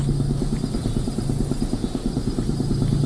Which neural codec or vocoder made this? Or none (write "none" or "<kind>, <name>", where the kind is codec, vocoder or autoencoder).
none